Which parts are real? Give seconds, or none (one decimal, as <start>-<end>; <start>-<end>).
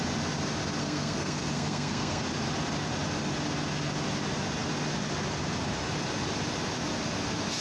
0.0-0.8; 2.2-7.6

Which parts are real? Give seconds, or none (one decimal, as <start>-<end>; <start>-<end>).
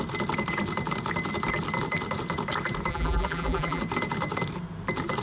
0.0-2.9; 3.8-5.2